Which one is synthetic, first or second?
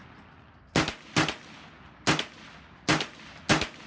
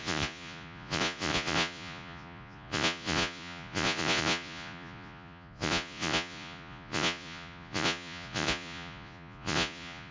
second